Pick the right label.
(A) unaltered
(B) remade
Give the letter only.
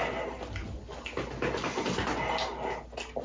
A